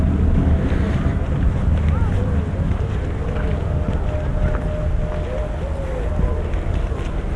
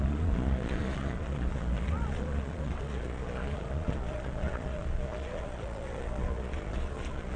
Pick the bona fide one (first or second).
first